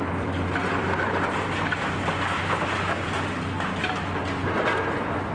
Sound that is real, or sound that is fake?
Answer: fake